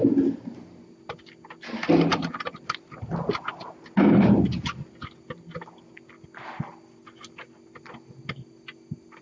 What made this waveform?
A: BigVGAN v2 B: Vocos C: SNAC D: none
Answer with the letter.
D